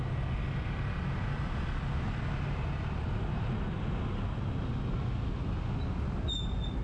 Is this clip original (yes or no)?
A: yes